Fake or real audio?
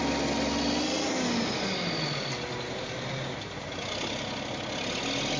real